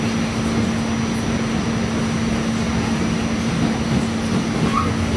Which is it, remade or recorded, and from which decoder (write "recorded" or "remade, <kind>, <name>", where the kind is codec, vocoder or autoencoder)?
recorded